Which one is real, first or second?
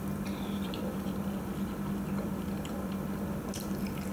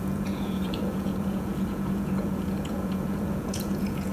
first